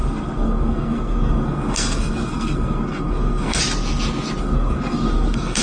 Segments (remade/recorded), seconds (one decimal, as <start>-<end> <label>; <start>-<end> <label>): 0.0-3.6 remade; 3.6-4.4 recorded; 4.4-5.6 remade